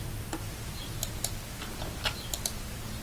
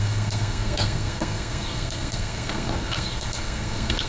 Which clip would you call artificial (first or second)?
second